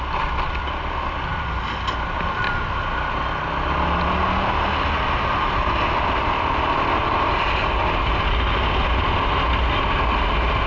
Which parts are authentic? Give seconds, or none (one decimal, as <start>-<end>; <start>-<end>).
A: 0.0-7.0; 7.8-10.7